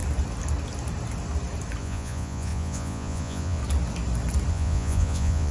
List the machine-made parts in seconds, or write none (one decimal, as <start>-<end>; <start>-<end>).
1.8-3.6; 4.5-5.5